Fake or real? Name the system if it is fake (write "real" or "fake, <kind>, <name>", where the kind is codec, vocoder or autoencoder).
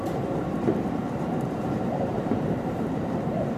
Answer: fake, vocoder, BigVGAN v2